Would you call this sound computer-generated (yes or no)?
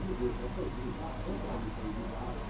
no